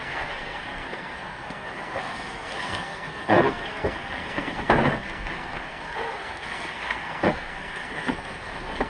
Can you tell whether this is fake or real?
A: fake